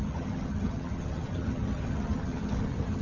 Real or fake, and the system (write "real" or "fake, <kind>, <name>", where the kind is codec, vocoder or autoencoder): fake, vocoder, HiFi-GAN